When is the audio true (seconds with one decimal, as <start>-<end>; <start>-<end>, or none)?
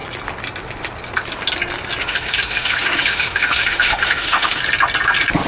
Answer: 0.0-2.0; 4.6-5.5